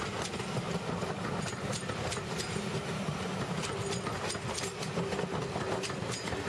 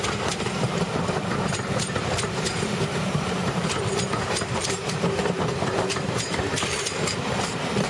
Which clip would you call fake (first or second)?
second